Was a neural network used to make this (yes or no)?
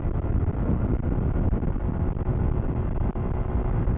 no